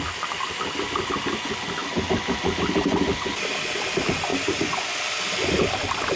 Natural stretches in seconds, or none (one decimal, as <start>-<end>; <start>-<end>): 0.0-4.3; 5.0-6.2